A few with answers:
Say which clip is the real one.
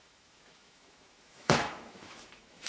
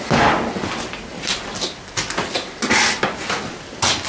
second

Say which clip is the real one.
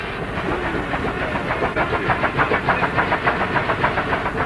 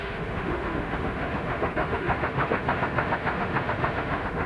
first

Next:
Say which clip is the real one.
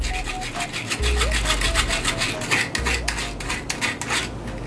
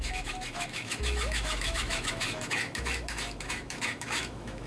first